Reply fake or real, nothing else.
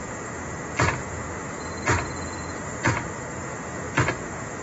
real